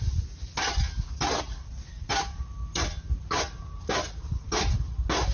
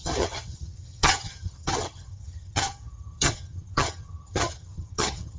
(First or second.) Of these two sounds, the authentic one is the first